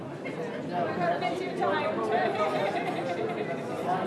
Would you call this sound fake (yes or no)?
no